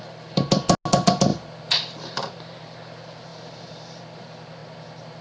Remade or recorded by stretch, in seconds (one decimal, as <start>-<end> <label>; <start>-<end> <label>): 0.0-1.3 recorded; 1.3-2.6 remade; 2.6-3.3 recorded; 3.3-4.0 remade; 4.0-5.2 recorded